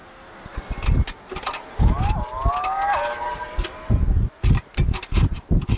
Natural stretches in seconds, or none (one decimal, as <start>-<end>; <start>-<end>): 0.0-5.8